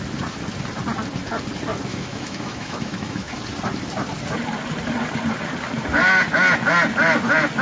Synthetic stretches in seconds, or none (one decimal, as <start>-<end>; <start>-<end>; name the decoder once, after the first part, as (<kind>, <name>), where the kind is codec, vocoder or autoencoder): 1.9-3.4 (autoencoder, DAC-VAE)